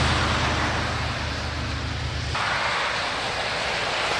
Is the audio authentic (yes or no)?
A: yes